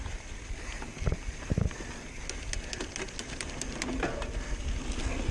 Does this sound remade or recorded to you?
recorded